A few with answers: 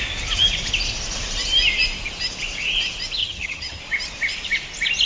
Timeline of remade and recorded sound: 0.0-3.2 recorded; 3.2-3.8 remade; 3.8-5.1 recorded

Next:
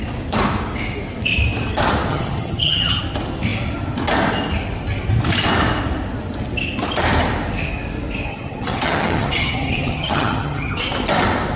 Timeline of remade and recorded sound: 0.0-2.1 recorded; 2.1-3.0 remade; 3.0-8.3 recorded; 8.3-10.8 remade; 10.8-11.6 recorded

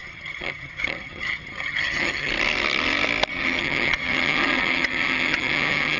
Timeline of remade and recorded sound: 0.0-2.3 remade; 2.3-3.3 recorded; 3.3-6.0 remade

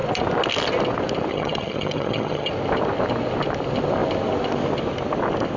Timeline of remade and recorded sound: 0.0-1.3 recorded; 1.3-2.5 remade; 2.5-5.6 recorded

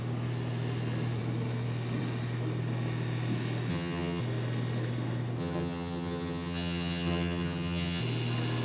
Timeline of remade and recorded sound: 0.0-3.7 recorded; 3.7-4.2 remade; 4.2-5.4 recorded; 5.4-8.0 remade; 8.0-8.6 recorded